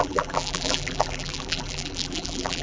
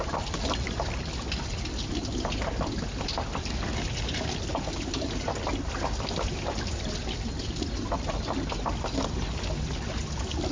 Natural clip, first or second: second